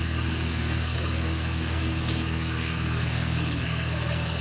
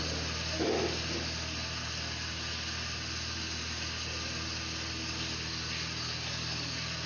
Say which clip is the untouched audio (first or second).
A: second